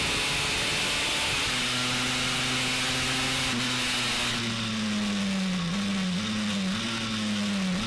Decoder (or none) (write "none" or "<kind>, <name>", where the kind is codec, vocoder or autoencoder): none